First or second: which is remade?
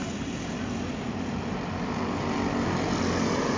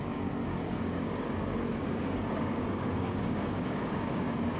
second